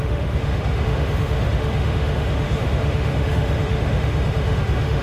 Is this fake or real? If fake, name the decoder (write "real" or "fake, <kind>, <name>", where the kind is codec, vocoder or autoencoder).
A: fake, autoencoder, DAC-VAE